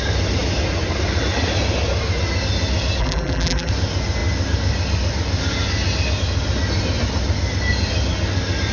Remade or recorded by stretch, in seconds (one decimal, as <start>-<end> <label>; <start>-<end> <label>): 0.0-3.0 recorded; 3.0-3.7 remade; 3.7-8.7 recorded